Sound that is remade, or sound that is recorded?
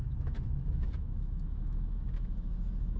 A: remade